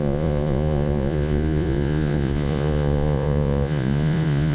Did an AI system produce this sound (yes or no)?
yes